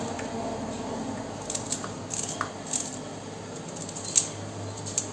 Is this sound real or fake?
real